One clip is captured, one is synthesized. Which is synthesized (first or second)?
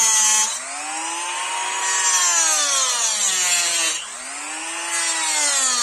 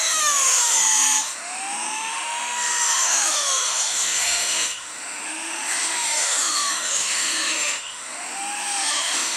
second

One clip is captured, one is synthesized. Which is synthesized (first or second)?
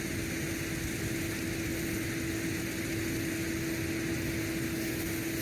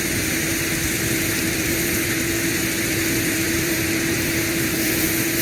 second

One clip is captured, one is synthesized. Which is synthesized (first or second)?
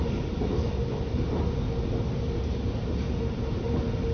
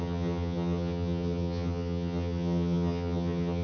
second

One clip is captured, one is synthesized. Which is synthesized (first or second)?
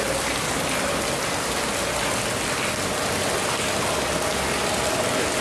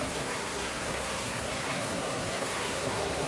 second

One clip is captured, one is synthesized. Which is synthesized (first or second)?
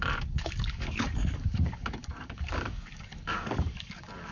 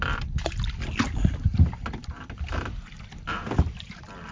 first